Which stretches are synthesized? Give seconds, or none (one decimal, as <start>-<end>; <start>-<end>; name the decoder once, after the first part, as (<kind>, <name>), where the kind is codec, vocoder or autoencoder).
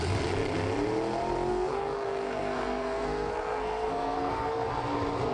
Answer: 1.5-4.7 (codec, SNAC)